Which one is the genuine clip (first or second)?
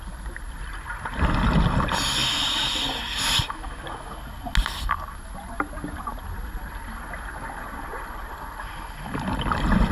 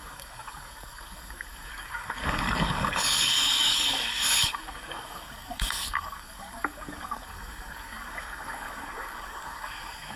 first